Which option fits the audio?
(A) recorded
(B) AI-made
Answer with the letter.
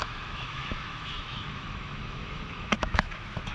B